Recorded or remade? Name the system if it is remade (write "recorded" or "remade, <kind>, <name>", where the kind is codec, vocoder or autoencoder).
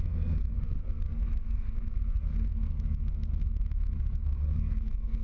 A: remade, codec, SNAC